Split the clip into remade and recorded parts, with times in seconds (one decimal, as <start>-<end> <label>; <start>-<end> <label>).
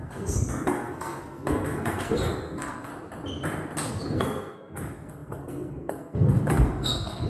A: 0.0-2.9 remade; 2.9-3.9 recorded; 3.9-7.3 remade